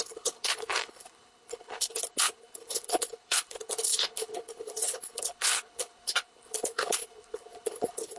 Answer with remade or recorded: remade